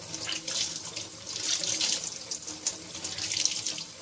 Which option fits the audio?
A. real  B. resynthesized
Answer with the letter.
A